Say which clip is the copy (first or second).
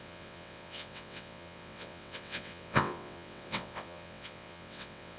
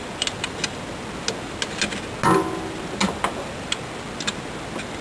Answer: first